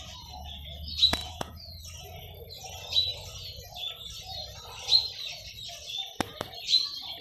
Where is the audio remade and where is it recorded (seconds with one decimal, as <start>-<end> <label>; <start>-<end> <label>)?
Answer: 0.0-1.2 recorded; 1.2-1.8 remade; 1.8-7.2 recorded